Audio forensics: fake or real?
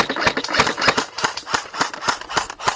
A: real